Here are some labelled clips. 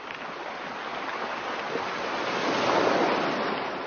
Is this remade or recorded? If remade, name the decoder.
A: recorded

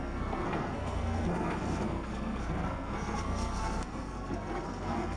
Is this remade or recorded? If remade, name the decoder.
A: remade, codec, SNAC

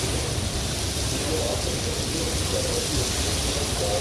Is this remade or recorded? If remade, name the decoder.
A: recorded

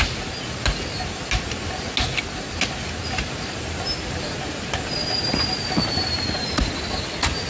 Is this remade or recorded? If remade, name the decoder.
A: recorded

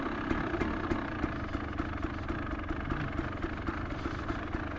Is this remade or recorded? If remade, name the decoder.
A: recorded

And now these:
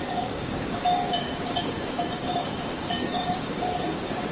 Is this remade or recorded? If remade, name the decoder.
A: remade, codec, DAC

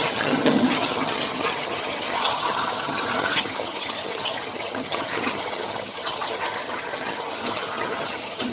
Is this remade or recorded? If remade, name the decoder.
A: remade, vocoder, HiFi-GAN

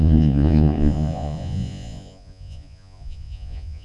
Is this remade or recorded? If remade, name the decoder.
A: remade, vocoder, Vocos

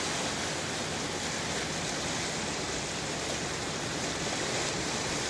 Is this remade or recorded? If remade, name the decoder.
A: recorded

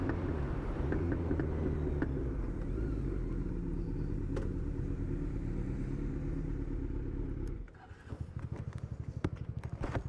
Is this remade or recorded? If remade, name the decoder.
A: recorded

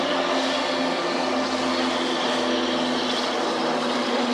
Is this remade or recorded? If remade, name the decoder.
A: recorded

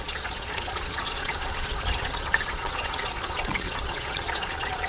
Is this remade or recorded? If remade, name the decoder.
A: remade, vocoder, Vocos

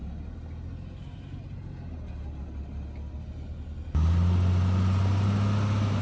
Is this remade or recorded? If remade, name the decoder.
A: recorded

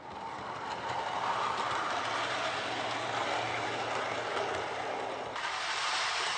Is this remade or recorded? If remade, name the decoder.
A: recorded